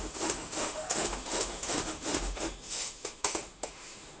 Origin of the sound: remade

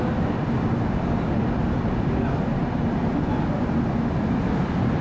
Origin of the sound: recorded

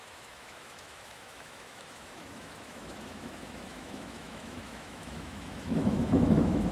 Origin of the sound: remade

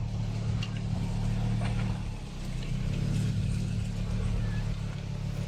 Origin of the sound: recorded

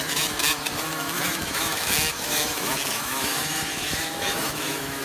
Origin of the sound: remade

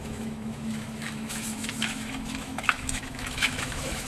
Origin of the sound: remade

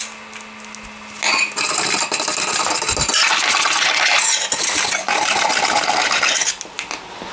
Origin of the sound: recorded